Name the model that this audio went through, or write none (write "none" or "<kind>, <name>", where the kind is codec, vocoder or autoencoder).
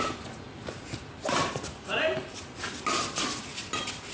none